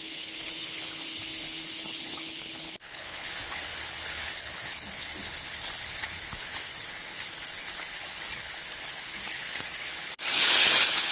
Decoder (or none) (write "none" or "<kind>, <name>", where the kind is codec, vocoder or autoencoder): codec, HILCodec